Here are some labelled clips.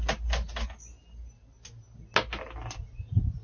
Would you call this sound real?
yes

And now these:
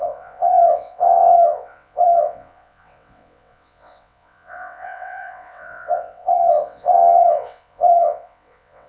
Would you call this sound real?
no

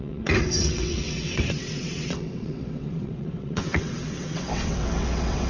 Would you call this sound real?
no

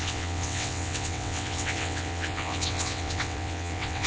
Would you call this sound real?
no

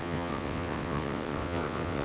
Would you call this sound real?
no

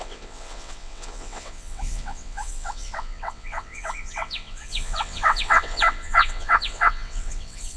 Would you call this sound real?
no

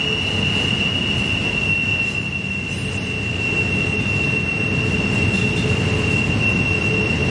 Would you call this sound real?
yes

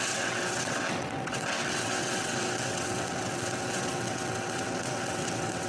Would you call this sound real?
no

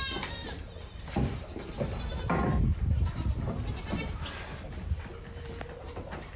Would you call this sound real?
yes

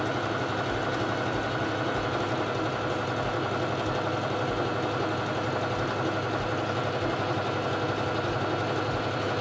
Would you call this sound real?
yes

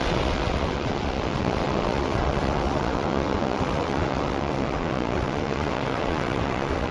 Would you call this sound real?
no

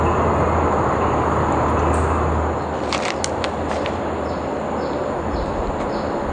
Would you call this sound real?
yes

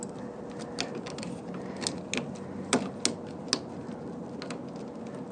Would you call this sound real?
yes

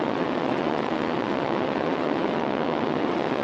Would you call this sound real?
no